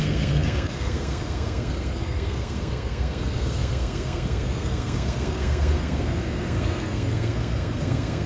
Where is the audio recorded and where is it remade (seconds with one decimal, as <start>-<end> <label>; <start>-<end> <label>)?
0.0-8.3 remade